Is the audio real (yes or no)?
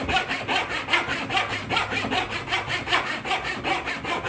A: yes